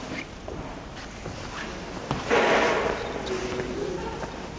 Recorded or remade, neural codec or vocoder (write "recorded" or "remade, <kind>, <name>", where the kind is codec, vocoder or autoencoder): recorded